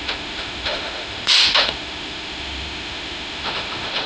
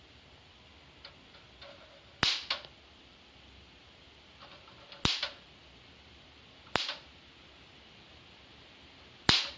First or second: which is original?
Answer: second